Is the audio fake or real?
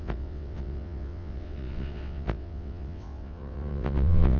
fake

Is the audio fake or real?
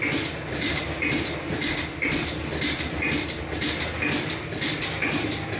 real